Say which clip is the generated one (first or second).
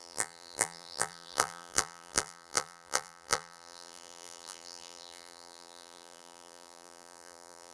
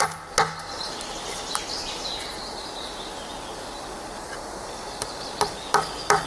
first